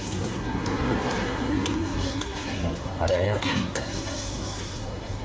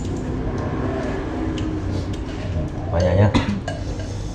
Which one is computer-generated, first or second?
first